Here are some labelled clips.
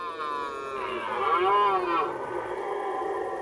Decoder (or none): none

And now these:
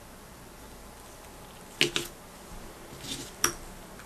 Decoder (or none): none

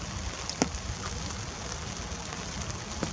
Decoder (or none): none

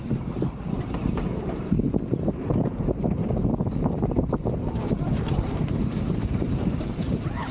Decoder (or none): vocoder, BigVGAN v2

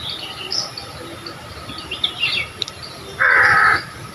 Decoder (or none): vocoder, BigVGAN v2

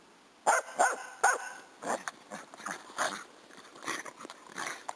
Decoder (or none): none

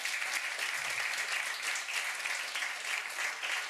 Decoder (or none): none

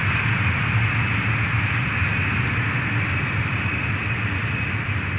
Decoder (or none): none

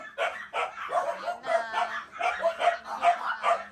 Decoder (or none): none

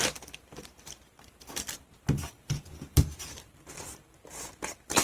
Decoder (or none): vocoder, BigVGAN v2